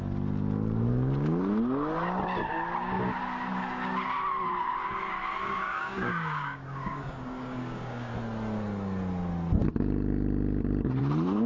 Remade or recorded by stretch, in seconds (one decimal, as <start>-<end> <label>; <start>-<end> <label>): 0.0-5.4 recorded; 5.4-8.1 remade; 8.1-11.5 recorded